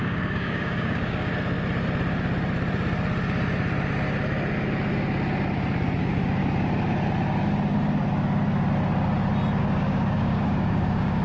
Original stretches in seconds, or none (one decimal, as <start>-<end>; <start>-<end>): 1.3-6.0; 6.4-9.6

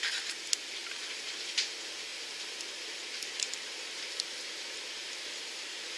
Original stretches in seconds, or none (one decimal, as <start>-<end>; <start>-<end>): 0.0-0.8; 1.3-2.1; 4.1-5.0

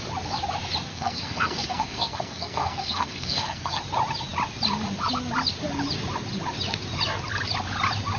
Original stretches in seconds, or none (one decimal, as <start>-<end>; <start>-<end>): 0.0-0.9; 3.8-8.2

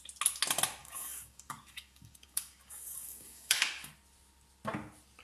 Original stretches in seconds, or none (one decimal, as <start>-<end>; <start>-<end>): 0.0-0.8; 3.9-5.2

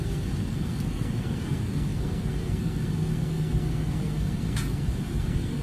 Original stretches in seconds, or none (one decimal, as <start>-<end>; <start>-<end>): none

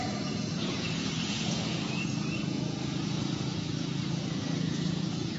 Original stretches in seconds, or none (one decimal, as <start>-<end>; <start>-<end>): none